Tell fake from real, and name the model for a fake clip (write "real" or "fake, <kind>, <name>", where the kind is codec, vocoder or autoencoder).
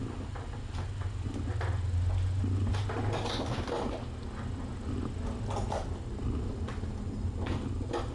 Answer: real